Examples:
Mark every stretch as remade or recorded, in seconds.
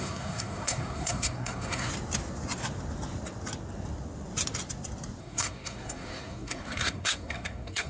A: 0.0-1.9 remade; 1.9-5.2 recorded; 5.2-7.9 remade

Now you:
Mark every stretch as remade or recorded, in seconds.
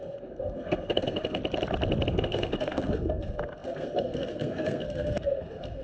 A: 0.0-1.4 remade; 1.4-2.1 recorded; 2.1-5.8 remade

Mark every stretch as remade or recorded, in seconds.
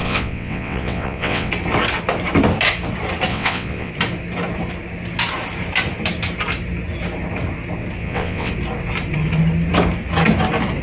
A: 0.0-1.5 remade; 1.5-3.3 recorded; 3.3-3.9 remade; 3.9-8.0 recorded; 8.0-8.5 remade; 8.5-10.8 recorded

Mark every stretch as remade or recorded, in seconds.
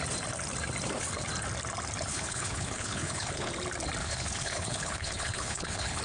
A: 0.0-2.1 recorded; 2.1-3.5 remade; 3.5-4.0 recorded; 4.0-6.0 remade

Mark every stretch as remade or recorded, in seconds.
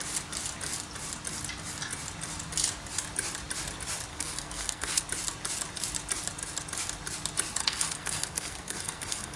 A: 0.0-4.1 recorded; 4.1-5.0 remade; 5.0-7.6 recorded; 7.6-9.4 remade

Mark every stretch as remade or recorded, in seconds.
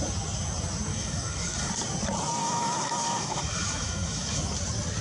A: 0.0-0.9 recorded; 0.9-1.7 remade; 1.7-2.4 recorded; 2.4-4.4 remade; 4.4-5.0 recorded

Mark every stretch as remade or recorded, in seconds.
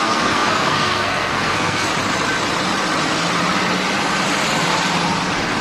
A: 0.0-1.9 remade; 1.9-5.6 recorded